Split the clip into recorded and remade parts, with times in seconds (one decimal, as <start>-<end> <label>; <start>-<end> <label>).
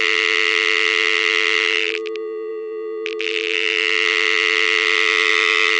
0.0-5.8 recorded